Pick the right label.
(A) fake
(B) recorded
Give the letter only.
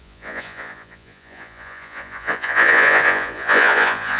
A